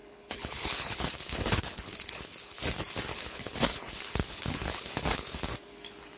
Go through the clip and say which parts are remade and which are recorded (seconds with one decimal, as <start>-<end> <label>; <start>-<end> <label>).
0.0-2.6 remade; 2.6-3.1 recorded; 3.1-5.4 remade; 5.4-6.2 recorded